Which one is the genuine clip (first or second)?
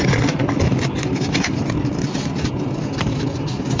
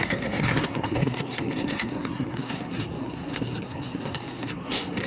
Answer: first